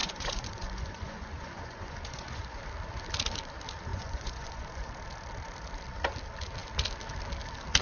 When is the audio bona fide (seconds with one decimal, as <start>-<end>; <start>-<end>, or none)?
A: 2.6-3.9; 4.9-7.8